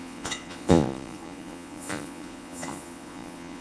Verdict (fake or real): fake